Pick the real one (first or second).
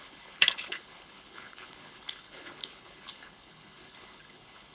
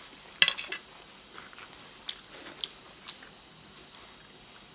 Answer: second